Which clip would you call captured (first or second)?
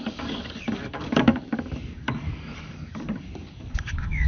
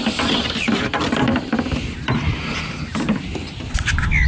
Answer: second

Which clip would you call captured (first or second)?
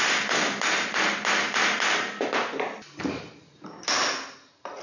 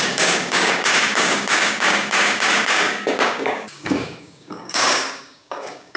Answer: first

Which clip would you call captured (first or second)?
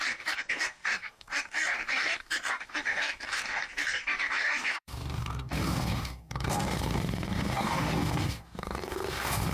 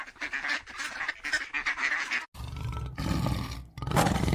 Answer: second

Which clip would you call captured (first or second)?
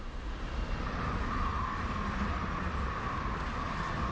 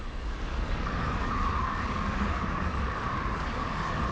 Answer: first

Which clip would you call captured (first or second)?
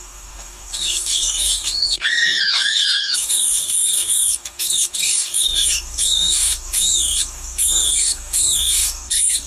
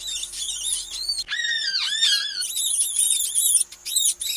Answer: second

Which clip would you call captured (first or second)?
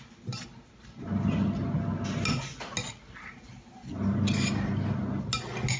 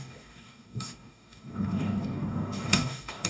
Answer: first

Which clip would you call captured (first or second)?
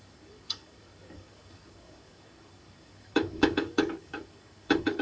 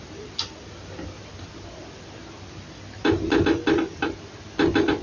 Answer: second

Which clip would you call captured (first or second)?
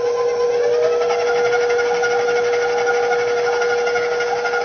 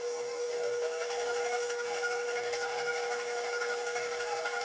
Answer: first